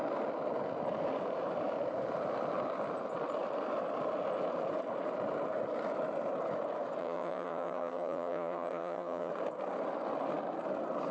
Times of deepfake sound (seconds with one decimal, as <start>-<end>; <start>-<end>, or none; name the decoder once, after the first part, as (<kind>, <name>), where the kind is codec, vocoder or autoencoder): 7.0-9.3 (vocoder, HiFi-GAN)